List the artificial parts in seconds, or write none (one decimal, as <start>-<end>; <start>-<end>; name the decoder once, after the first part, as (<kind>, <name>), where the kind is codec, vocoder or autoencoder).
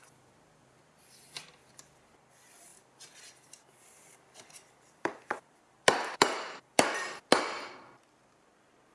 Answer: 2.7-7.4 (vocoder, BigVGAN v2)